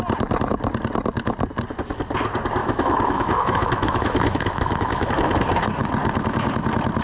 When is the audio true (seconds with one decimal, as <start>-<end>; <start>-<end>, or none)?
0.0-2.6; 5.1-7.0